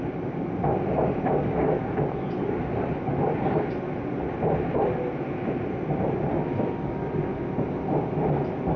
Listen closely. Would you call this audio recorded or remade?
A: recorded